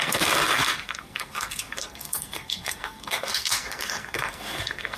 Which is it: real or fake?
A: fake